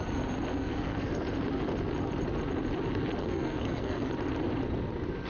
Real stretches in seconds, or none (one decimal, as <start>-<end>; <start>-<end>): 0.0-0.5; 1.1-3.2; 4.1-5.3